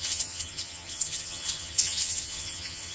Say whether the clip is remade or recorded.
remade